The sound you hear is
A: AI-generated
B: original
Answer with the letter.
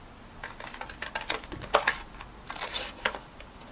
B